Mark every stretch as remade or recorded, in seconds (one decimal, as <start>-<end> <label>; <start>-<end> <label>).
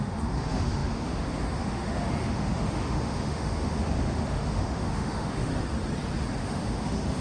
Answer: 0.0-5.5 remade; 5.5-6.4 recorded; 6.4-7.2 remade